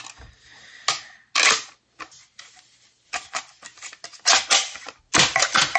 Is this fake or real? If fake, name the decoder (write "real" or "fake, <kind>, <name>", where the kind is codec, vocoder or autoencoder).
real